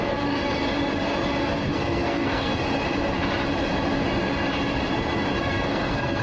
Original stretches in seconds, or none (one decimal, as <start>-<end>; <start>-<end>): 0.4-1.4; 2.5-5.4